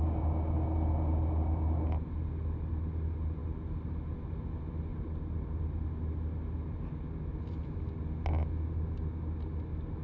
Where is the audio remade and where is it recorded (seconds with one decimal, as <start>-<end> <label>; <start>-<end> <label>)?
0.0-4.9 recorded; 4.9-5.5 remade; 5.5-10.0 recorded